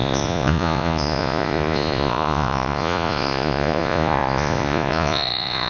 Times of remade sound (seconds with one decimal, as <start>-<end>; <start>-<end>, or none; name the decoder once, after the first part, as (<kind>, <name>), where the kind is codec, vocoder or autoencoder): 0.0-5.7 (vocoder, Vocos)